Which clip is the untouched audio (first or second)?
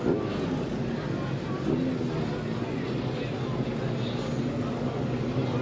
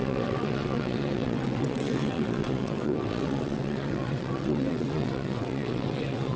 first